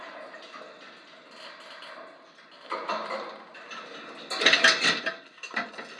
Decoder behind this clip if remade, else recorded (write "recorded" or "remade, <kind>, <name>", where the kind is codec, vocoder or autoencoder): recorded